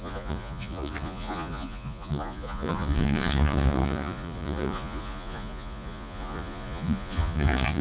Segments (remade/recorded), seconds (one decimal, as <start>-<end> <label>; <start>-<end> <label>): 0.0-7.8 remade